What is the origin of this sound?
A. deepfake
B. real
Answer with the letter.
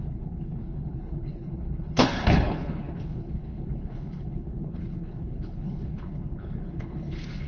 A